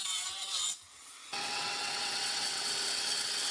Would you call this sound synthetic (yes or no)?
yes